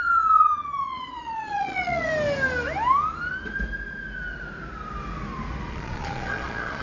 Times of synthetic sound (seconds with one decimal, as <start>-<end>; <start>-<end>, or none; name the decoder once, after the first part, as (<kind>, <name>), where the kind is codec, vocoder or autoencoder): 0.0-2.1 (vocoder, Vocos); 5.7-6.8